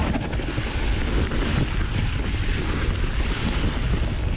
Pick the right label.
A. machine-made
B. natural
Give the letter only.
B